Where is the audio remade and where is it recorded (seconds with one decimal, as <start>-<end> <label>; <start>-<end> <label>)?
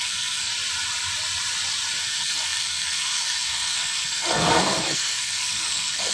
0.0-0.5 remade; 0.5-2.0 recorded; 2.0-6.1 remade